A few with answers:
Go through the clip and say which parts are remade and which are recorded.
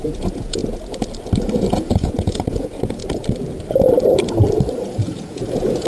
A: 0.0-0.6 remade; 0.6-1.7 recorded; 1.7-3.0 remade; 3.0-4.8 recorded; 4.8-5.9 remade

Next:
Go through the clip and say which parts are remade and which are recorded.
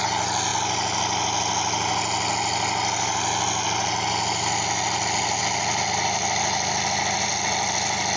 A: 0.0-8.2 recorded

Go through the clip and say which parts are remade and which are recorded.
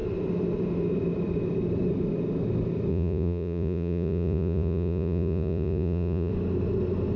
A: 0.0-2.9 recorded; 2.9-6.3 remade; 6.3-7.2 recorded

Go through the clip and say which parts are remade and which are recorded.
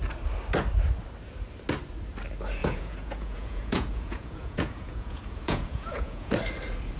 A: 0.0-2.6 recorded; 2.6-6.3 remade; 6.3-7.0 recorded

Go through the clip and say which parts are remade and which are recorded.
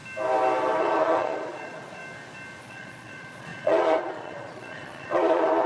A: 0.0-0.8 recorded; 0.8-2.0 remade; 2.0-2.6 recorded; 2.6-5.7 remade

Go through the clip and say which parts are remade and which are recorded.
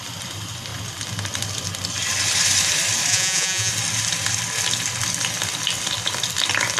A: 0.0-3.1 recorded; 3.1-3.7 remade; 3.7-6.8 recorded